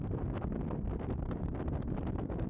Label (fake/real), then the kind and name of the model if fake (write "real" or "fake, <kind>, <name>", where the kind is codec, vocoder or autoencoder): real